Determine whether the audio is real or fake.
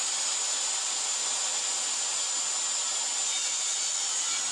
real